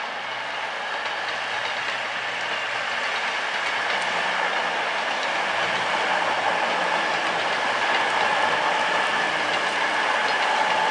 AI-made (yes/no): no